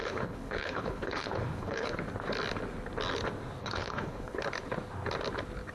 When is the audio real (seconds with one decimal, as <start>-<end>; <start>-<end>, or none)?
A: 2.0-3.6; 4.4-5.7